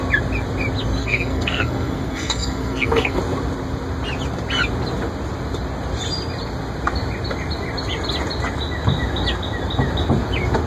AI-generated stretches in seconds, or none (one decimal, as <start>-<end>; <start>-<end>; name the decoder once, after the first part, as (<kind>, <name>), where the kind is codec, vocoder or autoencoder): 1.0-3.2 (codec, SNAC)